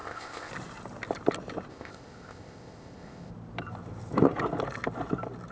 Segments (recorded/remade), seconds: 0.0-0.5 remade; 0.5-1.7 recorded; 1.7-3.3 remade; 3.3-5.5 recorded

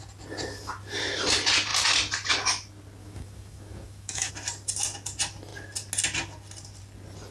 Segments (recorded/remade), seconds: 0.0-3.0 recorded; 3.0-4.3 remade; 4.3-7.3 recorded

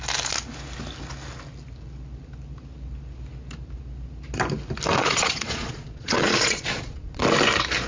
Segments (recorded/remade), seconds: 0.0-5.0 recorded; 5.0-7.2 remade; 7.2-7.9 recorded